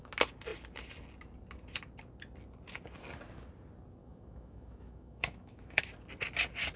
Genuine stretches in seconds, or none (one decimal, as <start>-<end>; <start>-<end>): 0.0-4.0; 5.8-6.8